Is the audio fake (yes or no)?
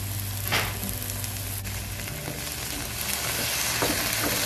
no